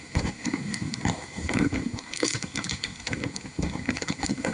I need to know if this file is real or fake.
fake